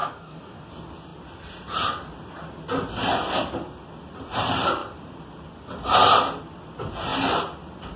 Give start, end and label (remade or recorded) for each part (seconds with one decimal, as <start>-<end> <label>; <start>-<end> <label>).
0.0-0.7 remade; 0.7-8.0 recorded